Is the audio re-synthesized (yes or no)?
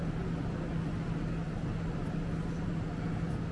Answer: no